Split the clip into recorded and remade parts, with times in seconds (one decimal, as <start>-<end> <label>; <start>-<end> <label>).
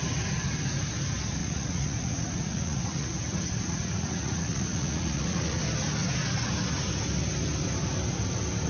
0.0-1.4 recorded; 1.4-5.6 remade; 5.6-8.7 recorded